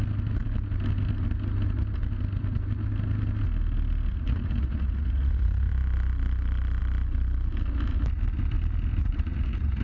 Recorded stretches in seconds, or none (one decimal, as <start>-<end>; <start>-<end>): 0.0-4.1; 5.7-9.0